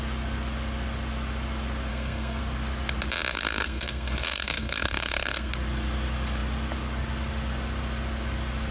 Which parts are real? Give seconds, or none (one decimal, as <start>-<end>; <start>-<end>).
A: 0.0-1.9; 2.4-3.3; 5.5-8.7